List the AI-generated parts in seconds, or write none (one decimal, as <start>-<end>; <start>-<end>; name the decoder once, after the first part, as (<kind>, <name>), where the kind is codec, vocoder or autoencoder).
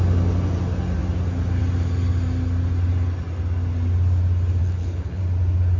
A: 4.6-5.2 (codec, HILCodec)